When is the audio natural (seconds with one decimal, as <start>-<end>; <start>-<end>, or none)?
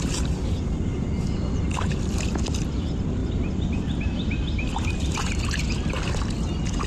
0.0-6.9